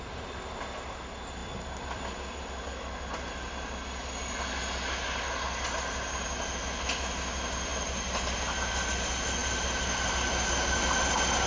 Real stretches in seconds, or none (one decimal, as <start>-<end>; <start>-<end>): 0.0-11.5